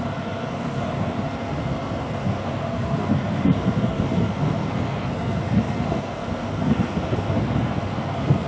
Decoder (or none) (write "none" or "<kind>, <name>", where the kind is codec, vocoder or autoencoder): codec, SNAC